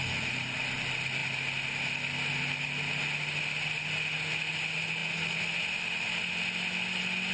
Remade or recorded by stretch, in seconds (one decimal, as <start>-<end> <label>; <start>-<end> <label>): 0.0-7.3 recorded